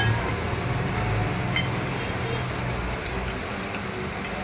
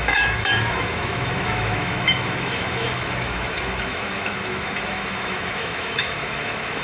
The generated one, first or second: second